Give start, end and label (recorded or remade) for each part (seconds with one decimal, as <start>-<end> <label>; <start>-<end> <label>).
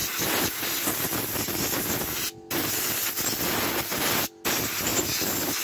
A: 0.0-3.4 recorded; 3.4-3.9 remade; 3.9-4.5 recorded; 4.5-5.6 remade